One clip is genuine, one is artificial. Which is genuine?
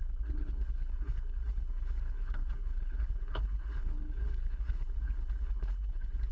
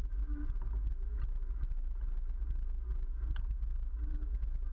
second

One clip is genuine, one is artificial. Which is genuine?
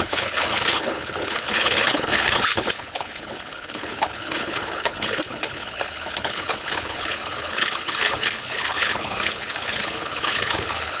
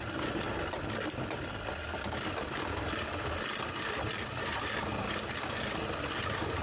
second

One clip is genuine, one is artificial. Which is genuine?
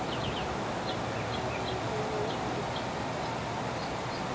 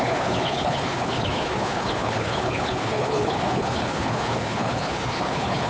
first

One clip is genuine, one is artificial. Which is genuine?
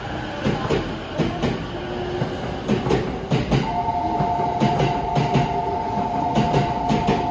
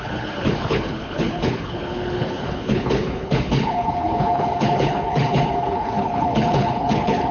first